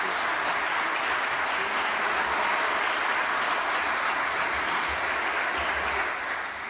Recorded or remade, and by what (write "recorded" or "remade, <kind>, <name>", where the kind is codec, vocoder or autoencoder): recorded